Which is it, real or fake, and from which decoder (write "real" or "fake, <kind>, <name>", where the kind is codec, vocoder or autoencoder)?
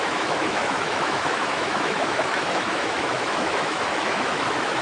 fake, autoencoder, DAC-VAE